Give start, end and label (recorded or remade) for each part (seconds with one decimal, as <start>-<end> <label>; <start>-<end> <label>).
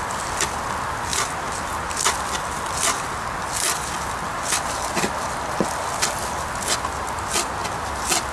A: 0.0-8.3 recorded